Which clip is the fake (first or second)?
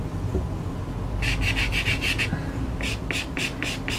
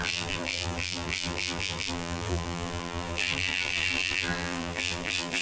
second